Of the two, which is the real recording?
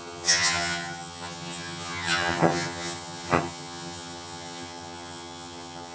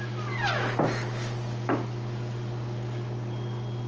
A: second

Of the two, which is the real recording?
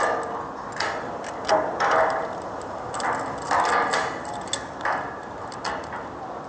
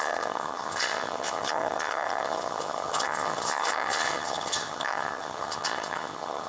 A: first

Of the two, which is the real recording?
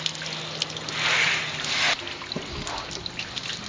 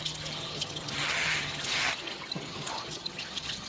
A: first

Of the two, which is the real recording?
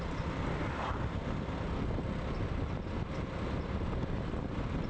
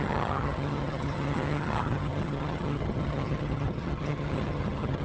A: first